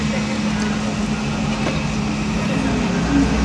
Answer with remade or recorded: recorded